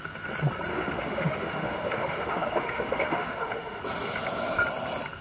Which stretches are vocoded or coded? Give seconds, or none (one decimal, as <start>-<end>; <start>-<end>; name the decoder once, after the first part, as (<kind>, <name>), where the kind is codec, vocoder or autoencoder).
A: 0.7-3.8 (autoencoder, DAC-VAE)